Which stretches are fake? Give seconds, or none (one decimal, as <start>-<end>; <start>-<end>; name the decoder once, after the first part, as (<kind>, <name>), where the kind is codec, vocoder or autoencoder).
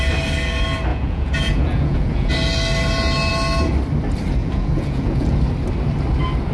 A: 0.9-2.3 (vocoder, Vocos); 4.4-5.4